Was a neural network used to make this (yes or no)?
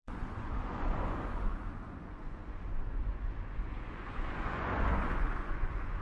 yes